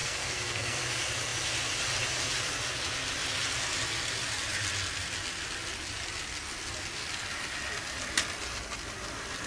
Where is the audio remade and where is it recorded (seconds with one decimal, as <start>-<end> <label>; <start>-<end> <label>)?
0.0-0.8 remade; 0.8-9.5 recorded